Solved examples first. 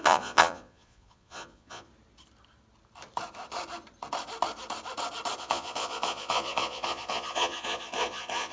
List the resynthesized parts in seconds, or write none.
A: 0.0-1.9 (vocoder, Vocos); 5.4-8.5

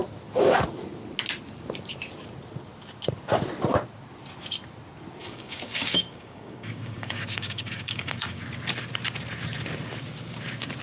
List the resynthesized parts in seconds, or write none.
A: 5.2-8.4 (codec, DAC)